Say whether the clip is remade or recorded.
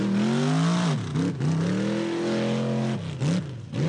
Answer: recorded